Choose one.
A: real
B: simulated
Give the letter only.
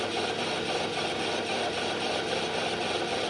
A